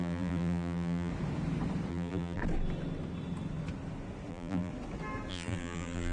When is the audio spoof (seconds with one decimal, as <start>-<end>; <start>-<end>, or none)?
0.0-1.1; 1.9-2.4; 4.3-4.7; 5.3-6.1